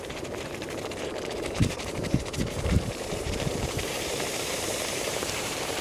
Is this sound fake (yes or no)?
yes